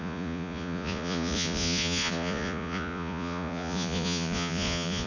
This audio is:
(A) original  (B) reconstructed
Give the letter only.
B